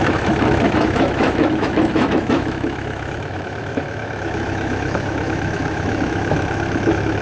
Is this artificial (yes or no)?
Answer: yes